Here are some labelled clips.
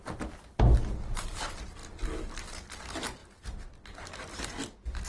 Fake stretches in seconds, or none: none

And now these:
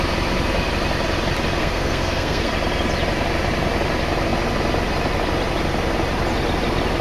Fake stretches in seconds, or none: 1.6-2.5 (codec, SNAC)

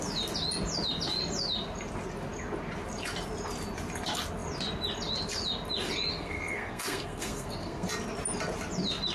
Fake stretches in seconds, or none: 6.1-7.9 (codec, SNAC)